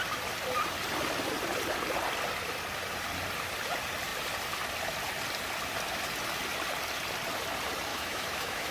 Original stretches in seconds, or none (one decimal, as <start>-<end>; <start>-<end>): 0.0-7.9